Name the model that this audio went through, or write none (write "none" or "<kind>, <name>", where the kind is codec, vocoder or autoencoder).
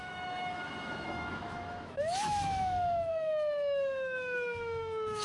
autoencoder, DAC-VAE